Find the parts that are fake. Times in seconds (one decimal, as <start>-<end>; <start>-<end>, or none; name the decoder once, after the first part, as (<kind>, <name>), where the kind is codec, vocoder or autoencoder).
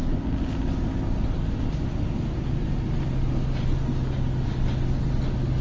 none